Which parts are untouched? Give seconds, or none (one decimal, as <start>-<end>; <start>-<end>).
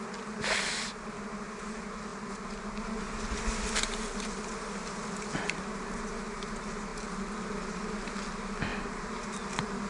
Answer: 0.0-9.9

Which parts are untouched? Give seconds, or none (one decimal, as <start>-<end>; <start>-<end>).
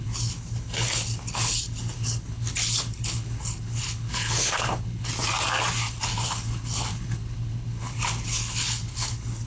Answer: 5.1-5.8